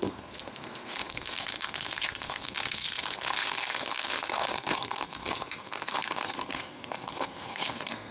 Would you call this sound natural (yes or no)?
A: no